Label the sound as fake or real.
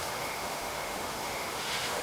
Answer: fake